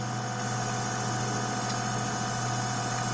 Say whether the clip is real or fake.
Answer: real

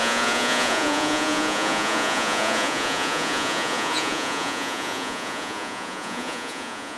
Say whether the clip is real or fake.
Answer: fake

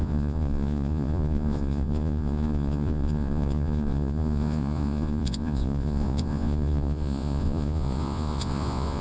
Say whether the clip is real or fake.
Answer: fake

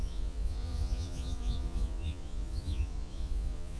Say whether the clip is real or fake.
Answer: fake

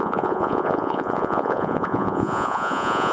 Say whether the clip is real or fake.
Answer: fake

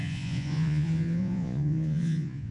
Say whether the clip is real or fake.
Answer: fake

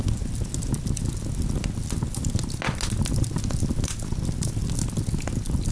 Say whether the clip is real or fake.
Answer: real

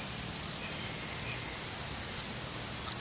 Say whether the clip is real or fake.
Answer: real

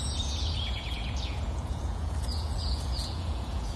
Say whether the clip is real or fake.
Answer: fake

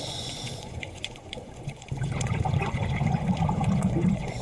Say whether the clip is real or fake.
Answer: fake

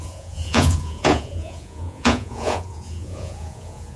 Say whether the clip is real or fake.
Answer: fake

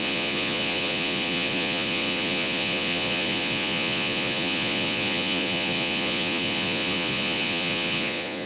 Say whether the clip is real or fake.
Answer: fake